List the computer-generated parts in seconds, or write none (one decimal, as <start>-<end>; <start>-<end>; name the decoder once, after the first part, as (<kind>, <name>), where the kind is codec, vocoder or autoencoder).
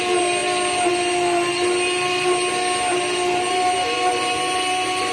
none